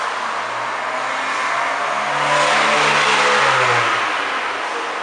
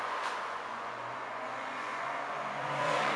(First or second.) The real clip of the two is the first